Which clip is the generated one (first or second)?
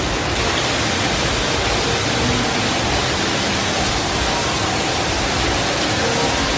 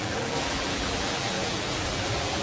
second